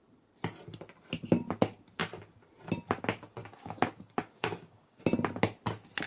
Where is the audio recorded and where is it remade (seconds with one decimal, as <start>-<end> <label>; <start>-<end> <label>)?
0.0-3.4 recorded; 3.4-5.0 remade; 5.0-6.1 recorded